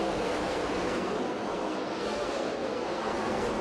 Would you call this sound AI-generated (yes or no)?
yes